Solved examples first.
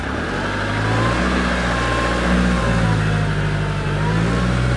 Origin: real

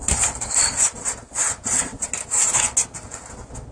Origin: real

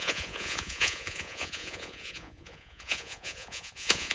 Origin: fake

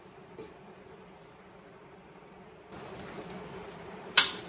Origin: real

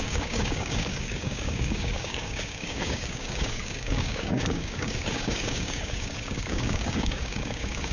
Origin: fake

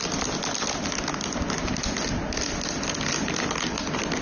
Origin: real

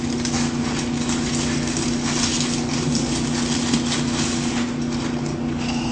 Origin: real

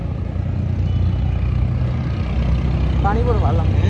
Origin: real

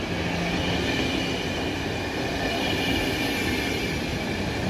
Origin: real